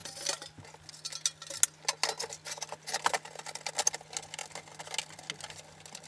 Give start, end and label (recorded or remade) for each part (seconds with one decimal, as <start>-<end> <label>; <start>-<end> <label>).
0.0-6.1 recorded